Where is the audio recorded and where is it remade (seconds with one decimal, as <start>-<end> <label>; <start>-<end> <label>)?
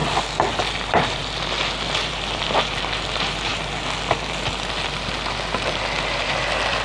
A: 0.0-0.7 recorded; 0.7-1.2 remade; 1.2-2.1 recorded; 2.1-3.5 remade; 3.5-6.0 recorded; 6.0-6.8 remade